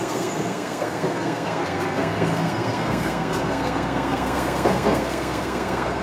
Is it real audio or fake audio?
fake